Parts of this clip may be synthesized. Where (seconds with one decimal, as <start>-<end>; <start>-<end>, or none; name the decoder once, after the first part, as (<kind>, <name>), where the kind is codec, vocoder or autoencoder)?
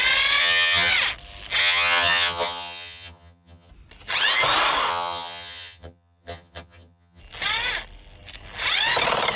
0.4-0.9 (vocoder, HiFi-GAN); 1.6-3.7; 4.9-7.2